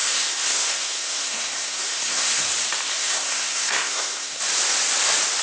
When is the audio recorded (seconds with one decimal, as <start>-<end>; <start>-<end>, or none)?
2.5-2.9; 4.4-5.4